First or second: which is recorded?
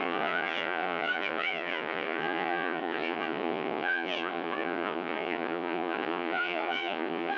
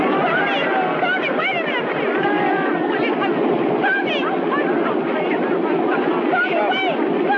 second